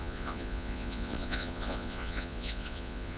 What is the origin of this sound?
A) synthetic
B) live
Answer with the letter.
A